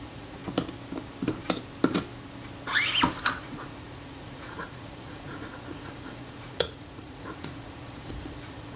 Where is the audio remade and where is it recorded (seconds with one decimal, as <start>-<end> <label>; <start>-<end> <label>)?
0.0-0.4 remade; 0.4-3.4 recorded; 3.4-8.8 remade